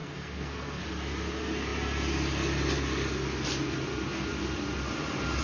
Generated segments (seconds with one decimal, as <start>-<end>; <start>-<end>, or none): 0.0-0.8